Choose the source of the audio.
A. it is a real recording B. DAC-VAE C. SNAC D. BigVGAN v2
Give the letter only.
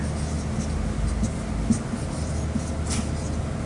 A